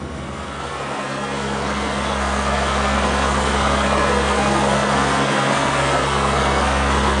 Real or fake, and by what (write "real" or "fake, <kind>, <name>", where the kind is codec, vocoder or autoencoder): fake, codec, SNAC